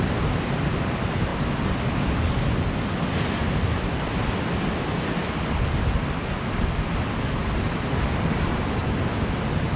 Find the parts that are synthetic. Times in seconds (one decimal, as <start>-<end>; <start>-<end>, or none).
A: none